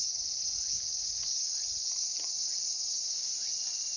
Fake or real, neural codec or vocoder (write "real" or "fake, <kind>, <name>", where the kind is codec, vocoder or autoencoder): real